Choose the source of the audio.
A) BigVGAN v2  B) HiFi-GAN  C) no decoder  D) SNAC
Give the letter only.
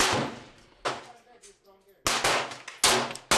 C